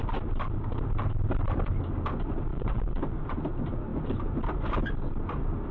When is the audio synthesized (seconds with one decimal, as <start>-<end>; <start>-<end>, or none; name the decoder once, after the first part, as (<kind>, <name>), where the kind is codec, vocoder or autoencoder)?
2.5-3.0 (vocoder, WaveNeXt)

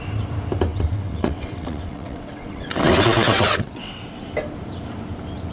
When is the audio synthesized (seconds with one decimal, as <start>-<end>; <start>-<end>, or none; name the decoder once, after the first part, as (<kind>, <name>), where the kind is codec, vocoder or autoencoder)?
0.7-4.0 (vocoder, WaveNeXt)